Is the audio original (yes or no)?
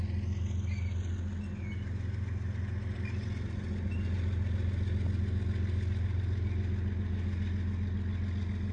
yes